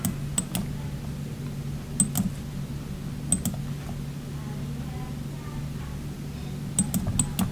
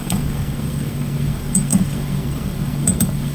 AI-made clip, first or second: second